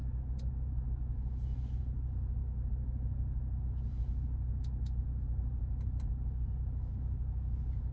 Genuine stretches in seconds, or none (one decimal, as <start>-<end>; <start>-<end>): 0.0-7.9

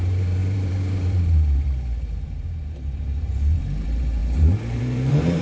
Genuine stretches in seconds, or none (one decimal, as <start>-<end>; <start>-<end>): none

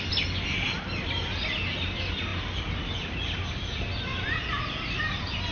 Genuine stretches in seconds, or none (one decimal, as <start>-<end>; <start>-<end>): 0.0-5.5

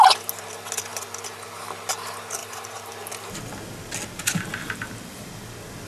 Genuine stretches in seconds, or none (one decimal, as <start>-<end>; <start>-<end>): 0.0-2.4; 2.9-4.6; 5.3-5.9